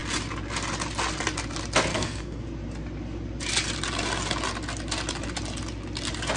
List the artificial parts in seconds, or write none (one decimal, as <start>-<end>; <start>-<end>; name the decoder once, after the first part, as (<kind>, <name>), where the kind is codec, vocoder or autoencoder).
1.9-2.4 (codec, SNAC)